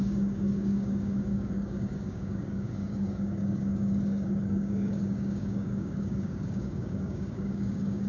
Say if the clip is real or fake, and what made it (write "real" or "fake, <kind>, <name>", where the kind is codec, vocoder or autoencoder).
fake, codec, DAC